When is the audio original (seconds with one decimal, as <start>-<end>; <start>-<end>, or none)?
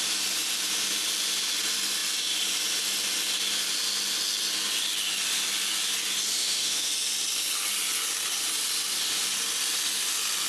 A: 0.0-6.4; 6.9-10.5